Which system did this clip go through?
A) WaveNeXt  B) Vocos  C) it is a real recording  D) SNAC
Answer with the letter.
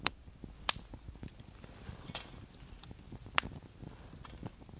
C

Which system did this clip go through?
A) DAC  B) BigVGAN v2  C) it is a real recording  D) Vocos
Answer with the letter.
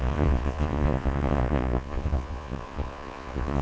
D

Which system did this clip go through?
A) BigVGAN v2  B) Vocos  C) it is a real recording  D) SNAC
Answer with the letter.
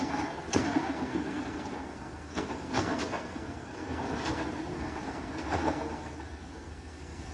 D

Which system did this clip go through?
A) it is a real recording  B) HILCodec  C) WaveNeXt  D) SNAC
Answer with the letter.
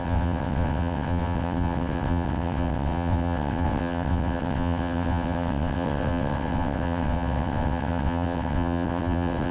C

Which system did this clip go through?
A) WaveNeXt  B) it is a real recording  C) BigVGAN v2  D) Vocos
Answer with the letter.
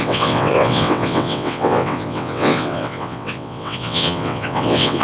A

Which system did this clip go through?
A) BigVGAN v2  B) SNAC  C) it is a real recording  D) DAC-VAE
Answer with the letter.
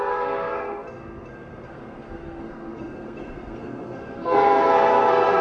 B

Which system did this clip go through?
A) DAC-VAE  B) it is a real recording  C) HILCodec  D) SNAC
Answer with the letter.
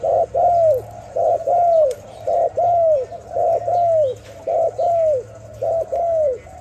B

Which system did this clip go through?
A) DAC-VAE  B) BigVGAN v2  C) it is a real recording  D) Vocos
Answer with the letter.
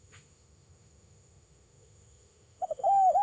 A